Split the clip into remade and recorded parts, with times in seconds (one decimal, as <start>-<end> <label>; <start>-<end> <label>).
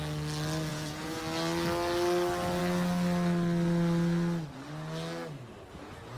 0.0-0.7 recorded; 0.7-1.2 remade; 1.2-6.2 recorded